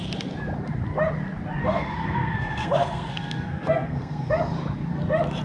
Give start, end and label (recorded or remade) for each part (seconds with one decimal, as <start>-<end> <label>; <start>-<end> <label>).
0.0-1.6 recorded; 1.6-4.3 remade; 4.3-5.4 recorded